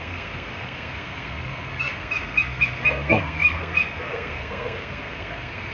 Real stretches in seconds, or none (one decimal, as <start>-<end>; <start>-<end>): none